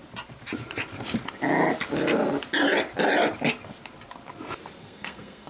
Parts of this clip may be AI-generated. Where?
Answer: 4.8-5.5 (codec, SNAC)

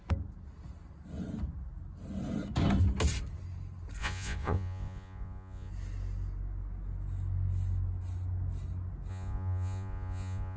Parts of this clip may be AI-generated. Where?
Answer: 4.0-5.7 (vocoder, Vocos); 9.1-10.6

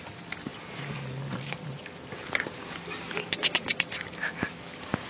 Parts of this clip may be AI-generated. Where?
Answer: none

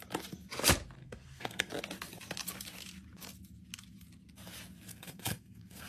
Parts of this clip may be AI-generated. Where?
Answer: 1.0-1.7 (codec, SNAC); 4.9-5.9

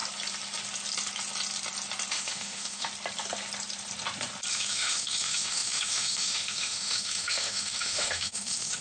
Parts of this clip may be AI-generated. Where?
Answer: 2.1-2.9 (autoencoder, DAC-VAE); 4.5-8.8